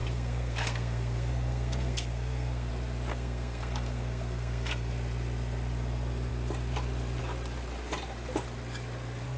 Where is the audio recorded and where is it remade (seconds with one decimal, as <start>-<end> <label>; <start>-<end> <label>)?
0.0-2.7 remade; 2.7-3.1 recorded; 3.1-4.9 remade; 4.9-9.4 recorded